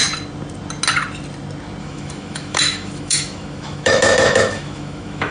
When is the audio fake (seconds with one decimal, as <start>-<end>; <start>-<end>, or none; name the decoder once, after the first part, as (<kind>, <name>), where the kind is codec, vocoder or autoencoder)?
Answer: 1.8-5.3 (autoencoder, DAC-VAE)